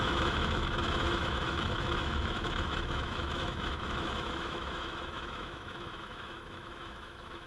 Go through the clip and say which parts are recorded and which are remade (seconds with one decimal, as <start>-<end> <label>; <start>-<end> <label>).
0.0-7.5 remade